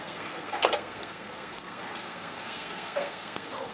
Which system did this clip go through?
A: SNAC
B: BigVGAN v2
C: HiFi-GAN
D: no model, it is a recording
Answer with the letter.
A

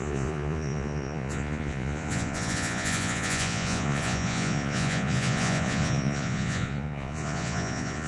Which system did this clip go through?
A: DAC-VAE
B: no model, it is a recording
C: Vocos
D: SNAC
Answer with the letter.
C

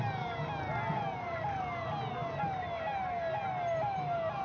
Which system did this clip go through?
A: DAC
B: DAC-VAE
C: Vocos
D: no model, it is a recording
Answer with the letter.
D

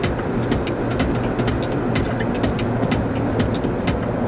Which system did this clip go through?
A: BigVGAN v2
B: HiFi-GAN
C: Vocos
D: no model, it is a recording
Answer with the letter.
D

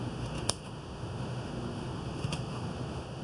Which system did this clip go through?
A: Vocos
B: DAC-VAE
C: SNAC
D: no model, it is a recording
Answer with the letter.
B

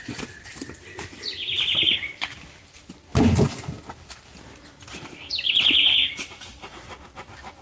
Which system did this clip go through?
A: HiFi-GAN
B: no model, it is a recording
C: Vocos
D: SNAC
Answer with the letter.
B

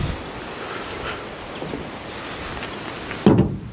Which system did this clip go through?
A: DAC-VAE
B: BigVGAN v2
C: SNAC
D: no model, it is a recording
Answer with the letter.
D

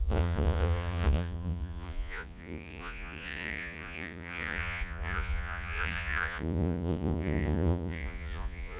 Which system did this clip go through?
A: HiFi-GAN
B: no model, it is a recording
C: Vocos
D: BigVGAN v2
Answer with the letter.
C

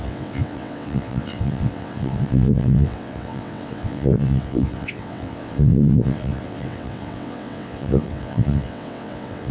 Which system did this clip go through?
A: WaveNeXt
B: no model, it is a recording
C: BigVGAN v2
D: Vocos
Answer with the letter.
A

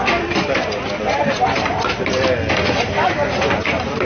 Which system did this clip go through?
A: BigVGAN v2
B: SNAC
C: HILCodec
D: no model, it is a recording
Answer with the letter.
D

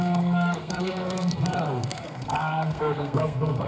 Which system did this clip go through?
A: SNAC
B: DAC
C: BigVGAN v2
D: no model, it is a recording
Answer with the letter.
A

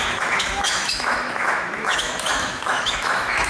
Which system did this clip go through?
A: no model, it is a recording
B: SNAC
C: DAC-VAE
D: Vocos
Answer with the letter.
C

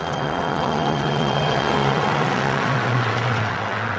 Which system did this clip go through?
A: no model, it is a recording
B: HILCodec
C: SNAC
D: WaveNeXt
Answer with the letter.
D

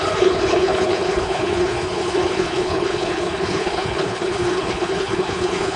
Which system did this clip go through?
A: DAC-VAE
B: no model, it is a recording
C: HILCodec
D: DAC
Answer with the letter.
C